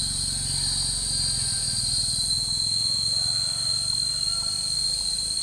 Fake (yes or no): no